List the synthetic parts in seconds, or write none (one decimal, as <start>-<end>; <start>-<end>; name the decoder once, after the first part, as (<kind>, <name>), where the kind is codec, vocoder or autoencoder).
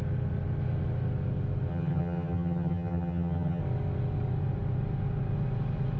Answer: 1.7-3.6 (vocoder, HiFi-GAN)